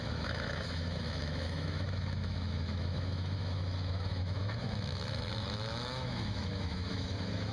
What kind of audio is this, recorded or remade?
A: remade